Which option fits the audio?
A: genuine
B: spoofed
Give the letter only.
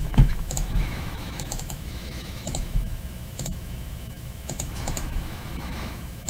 B